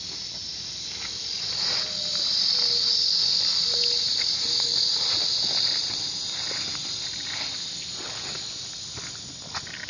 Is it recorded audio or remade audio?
recorded